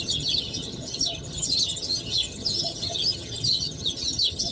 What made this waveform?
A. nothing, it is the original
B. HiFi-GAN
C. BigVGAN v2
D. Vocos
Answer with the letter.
B